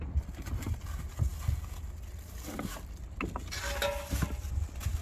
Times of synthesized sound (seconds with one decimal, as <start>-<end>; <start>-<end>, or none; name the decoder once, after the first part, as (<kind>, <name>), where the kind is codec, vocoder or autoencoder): none